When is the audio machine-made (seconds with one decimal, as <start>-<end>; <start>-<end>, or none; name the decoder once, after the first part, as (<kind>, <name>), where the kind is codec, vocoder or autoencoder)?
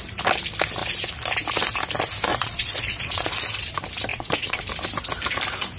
2.3-3.4 (vocoder, Vocos); 4.1-4.6